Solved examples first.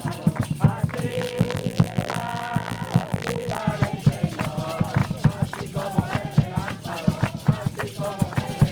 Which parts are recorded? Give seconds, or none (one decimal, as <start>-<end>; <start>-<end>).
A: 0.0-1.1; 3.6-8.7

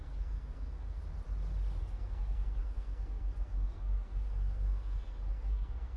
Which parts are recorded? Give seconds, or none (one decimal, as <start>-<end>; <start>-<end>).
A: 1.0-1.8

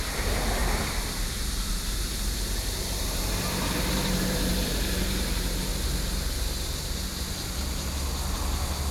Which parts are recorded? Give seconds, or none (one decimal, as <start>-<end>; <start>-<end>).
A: 5.7-8.9

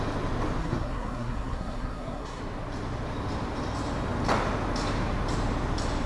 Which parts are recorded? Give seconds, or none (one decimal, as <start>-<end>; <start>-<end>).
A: 0.0-0.6; 2.4-6.1

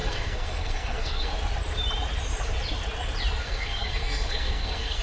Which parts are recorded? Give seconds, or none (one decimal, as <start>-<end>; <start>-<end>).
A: 1.3-3.4

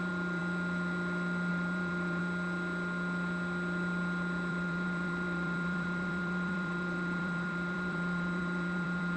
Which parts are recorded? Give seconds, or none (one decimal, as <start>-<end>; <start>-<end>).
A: 0.4-1.5; 2.2-4.5